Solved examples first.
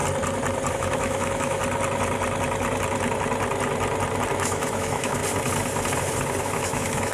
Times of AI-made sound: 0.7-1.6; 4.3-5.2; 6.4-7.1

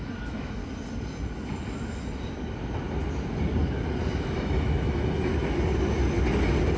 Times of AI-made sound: 0.0-0.6; 4.1-5.3

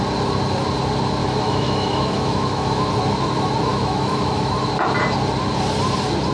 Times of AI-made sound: 1.2-2.9; 3.7-4.7

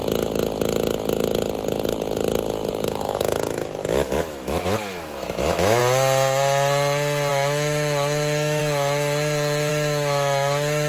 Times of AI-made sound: 2.7-5.8; 7.3-8.6; 9.7-10.9

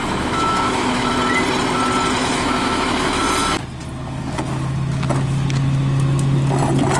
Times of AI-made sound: 0.0-1.1; 2.2-3.2

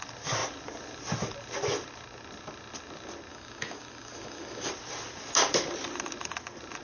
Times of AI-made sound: 3.3-4.7